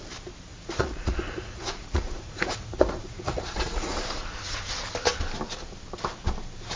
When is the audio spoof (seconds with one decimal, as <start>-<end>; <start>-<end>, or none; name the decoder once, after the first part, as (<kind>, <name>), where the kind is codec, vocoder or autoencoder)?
0.5-4.6 (vocoder, Vocos)